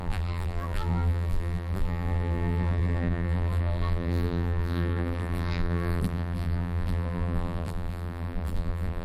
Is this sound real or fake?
fake